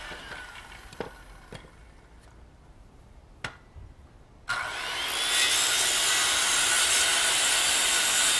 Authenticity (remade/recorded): recorded